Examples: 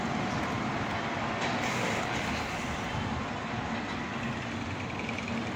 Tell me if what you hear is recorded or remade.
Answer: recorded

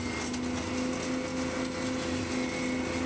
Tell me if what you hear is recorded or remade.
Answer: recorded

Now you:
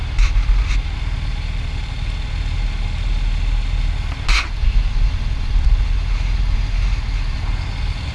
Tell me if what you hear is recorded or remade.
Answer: recorded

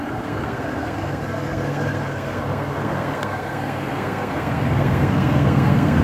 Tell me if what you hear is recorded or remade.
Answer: remade